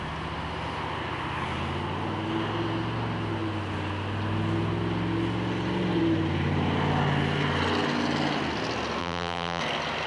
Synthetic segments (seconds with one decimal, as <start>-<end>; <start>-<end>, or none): 9.0-9.6